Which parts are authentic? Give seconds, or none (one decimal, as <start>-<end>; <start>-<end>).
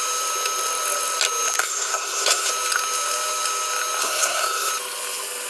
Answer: 0.0-1.6; 2.5-4.0; 4.7-5.5